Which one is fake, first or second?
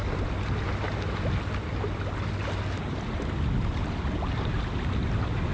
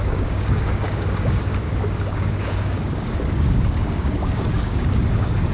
second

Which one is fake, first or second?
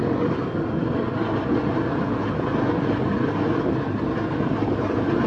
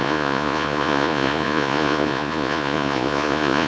second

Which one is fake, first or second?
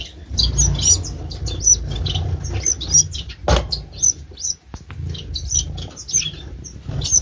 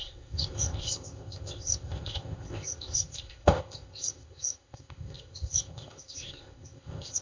second